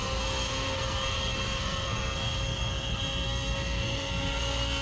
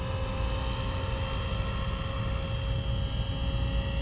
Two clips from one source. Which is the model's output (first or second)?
first